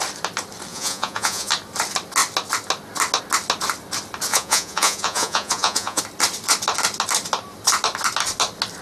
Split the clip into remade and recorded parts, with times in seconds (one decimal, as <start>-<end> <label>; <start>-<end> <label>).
0.0-0.7 recorded; 0.7-1.5 remade; 1.5-4.3 recorded; 4.3-6.0 remade; 6.0-8.8 recorded